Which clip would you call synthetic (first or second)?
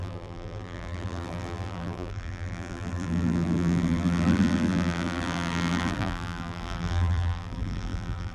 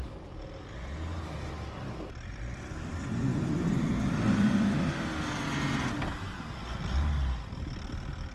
first